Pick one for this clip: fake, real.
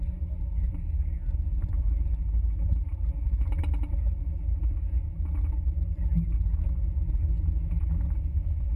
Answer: real